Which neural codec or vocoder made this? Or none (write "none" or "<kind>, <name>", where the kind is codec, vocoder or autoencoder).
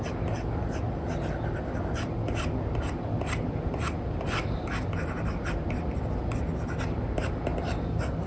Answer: none